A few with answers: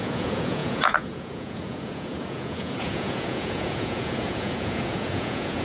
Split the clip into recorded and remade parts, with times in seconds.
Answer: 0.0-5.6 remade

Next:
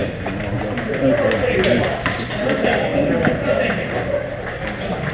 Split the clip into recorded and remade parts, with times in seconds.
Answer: 0.0-5.1 recorded

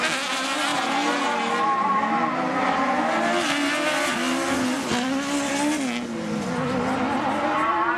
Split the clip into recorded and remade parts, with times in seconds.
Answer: 0.0-8.0 recorded

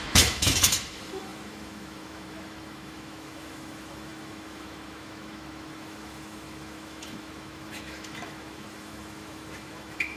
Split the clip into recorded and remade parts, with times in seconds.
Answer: 0.0-10.2 remade

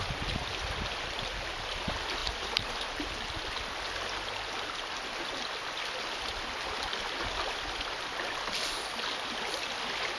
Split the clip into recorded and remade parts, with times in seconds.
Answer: 0.0-2.2 recorded; 2.2-3.1 remade; 3.1-10.2 recorded

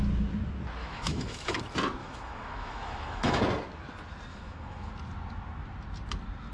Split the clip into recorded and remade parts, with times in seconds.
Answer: 0.0-0.8 recorded; 0.8-1.6 remade; 1.6-2.0 recorded; 2.0-3.4 remade; 3.4-4.3 recorded; 4.3-4.9 remade; 4.9-6.5 recorded